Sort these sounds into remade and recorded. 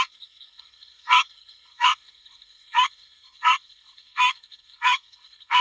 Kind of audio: remade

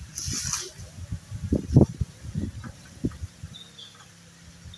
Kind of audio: recorded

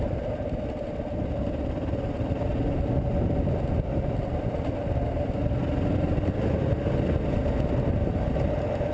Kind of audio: recorded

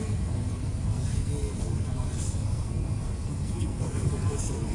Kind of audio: remade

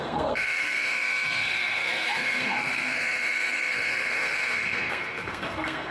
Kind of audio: remade